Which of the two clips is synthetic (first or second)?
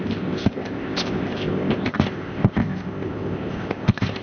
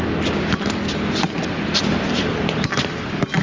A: first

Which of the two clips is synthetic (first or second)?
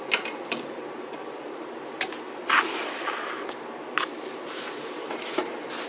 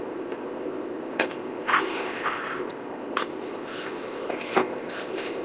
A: second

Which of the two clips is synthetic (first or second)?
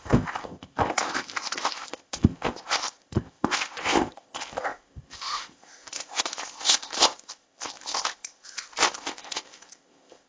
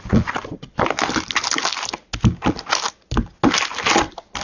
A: first